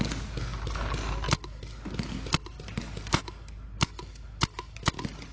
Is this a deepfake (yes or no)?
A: no